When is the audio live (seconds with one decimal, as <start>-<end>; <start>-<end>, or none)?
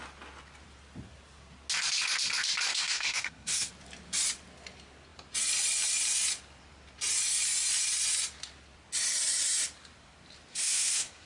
0.0-2.7; 3.7-10.5